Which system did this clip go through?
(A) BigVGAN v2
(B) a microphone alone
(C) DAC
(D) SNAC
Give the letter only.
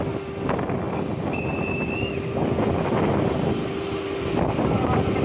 B